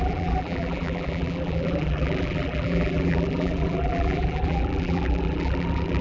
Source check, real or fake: fake